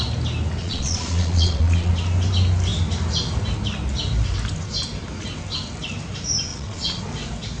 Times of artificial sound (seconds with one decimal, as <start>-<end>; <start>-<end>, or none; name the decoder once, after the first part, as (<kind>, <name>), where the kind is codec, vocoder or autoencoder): 0.6-1.9 (vocoder, Vocos); 6.5-7.0